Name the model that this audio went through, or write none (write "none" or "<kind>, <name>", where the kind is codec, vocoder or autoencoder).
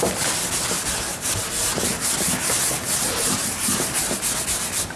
none